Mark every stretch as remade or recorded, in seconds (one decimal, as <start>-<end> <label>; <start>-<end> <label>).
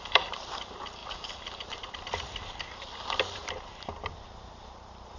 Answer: 0.0-5.2 recorded